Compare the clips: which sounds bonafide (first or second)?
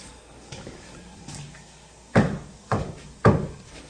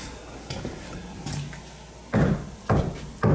second